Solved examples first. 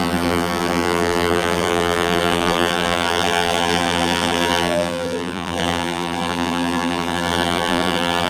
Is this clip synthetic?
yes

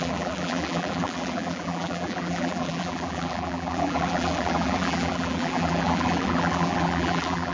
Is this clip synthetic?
yes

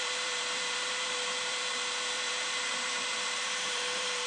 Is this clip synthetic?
yes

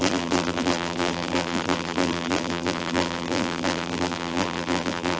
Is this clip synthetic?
yes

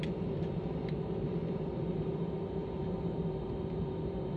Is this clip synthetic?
yes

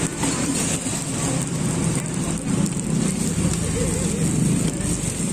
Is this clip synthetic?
no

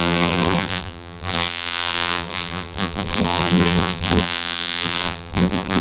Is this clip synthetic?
yes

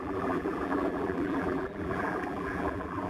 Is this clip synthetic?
yes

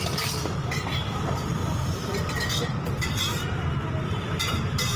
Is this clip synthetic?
yes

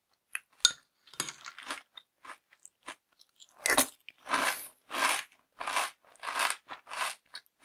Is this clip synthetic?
no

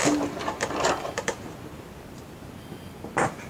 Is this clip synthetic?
yes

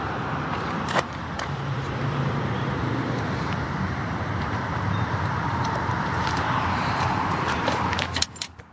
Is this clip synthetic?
yes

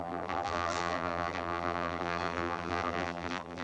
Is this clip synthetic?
yes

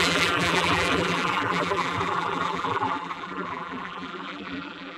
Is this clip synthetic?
yes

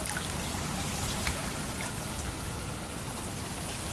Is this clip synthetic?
no